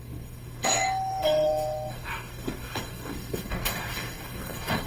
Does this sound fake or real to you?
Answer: fake